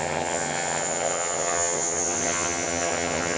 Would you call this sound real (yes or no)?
no